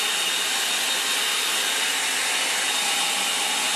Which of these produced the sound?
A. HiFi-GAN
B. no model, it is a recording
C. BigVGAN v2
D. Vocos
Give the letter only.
B